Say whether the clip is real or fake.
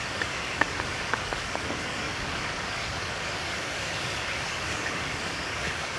fake